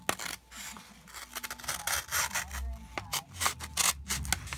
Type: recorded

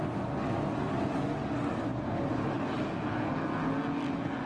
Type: recorded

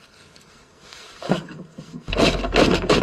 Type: remade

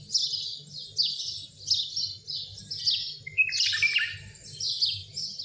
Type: recorded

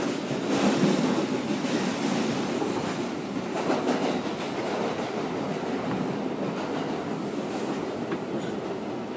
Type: recorded